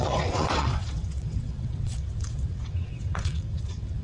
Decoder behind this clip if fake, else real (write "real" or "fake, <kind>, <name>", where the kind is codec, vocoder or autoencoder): fake, vocoder, WaveNeXt